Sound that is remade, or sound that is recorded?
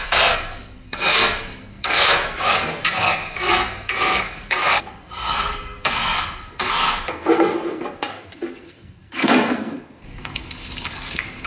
remade